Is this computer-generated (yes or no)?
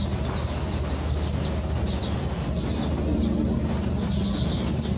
no